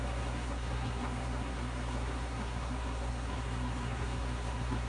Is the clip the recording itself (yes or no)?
no